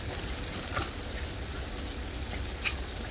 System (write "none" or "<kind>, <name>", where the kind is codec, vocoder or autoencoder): none